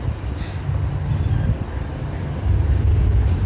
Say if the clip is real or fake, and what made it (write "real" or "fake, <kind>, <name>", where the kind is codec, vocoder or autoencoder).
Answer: real